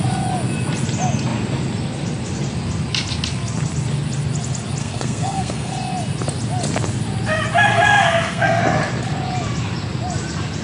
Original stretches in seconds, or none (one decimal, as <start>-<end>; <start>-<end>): 0.0-4.8; 5.7-7.7; 8.6-10.6